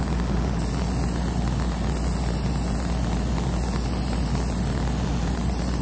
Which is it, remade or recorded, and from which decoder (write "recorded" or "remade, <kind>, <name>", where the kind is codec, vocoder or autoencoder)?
recorded